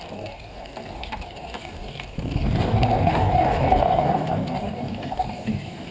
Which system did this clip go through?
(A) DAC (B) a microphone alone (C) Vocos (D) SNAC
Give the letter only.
A